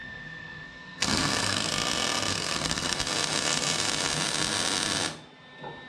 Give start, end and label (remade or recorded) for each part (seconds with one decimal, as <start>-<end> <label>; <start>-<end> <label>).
0.0-1.7 remade; 1.7-2.3 recorded; 2.3-3.0 remade; 3.0-5.9 recorded